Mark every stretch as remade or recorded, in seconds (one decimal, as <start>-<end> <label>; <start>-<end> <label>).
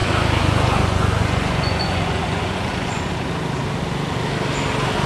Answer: 0.0-3.1 remade; 3.1-5.1 recorded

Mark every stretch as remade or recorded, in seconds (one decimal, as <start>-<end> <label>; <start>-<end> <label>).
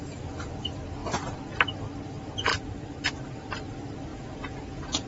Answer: 0.0-4.1 recorded; 4.1-5.1 remade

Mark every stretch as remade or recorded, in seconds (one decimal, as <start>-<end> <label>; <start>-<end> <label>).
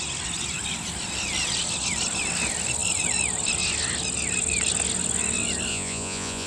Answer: 0.0-5.7 recorded; 5.7-6.5 remade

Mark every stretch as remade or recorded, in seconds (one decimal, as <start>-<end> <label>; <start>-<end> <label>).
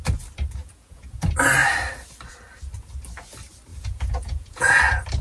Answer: 0.0-0.6 recorded; 0.6-1.2 remade; 1.2-3.7 recorded; 3.7-4.8 remade; 4.8-5.2 recorded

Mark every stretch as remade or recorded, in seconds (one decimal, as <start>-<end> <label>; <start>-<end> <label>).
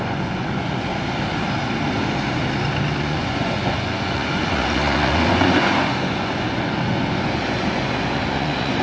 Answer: 0.0-0.9 remade; 0.9-3.0 recorded; 3.0-8.8 remade